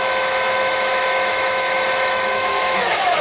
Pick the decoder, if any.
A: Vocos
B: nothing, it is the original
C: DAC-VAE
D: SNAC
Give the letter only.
C